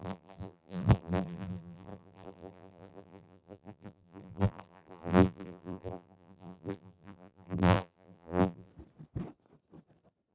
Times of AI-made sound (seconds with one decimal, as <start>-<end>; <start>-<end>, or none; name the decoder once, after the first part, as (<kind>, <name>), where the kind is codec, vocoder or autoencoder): 0.0-8.7 (vocoder, BigVGAN v2)